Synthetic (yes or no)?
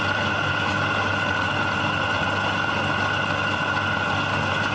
no